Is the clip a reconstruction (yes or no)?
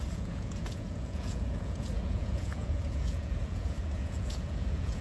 yes